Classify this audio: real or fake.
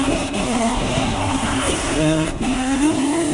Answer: fake